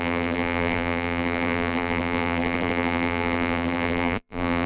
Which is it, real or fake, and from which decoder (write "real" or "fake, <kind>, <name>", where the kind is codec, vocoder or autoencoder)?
fake, vocoder, BigVGAN v2